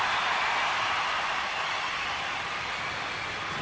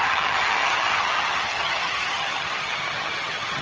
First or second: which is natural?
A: first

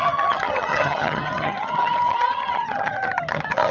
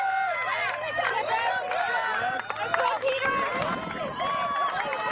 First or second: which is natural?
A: second